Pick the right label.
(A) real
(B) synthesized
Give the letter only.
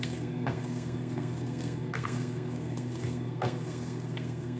B